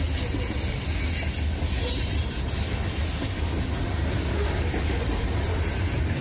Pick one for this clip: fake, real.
real